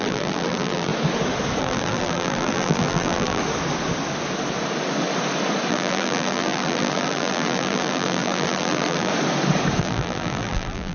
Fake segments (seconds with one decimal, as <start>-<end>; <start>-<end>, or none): 0.0-0.9; 1.6-3.4; 5.7-9.1; 9.8-10.9